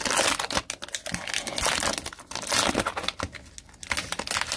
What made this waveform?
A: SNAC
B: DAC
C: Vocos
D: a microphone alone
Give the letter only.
D